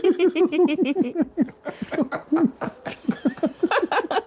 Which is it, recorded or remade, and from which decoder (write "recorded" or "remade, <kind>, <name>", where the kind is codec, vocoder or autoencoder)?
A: recorded